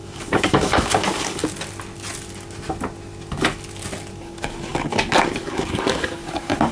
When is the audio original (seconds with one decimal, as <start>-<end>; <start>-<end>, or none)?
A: 1.4-4.2